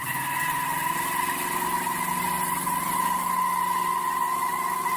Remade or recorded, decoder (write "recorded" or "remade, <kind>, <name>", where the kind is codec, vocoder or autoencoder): recorded